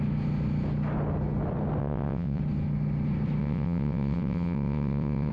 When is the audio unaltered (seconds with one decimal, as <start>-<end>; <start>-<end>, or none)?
0.0-1.8; 2.4-3.4